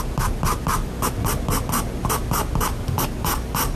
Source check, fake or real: real